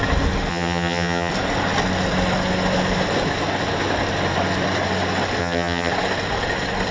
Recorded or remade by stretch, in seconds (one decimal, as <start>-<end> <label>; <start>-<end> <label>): 0.0-0.5 recorded; 0.5-1.3 remade; 1.3-5.4 recorded; 5.4-5.9 remade; 5.9-6.9 recorded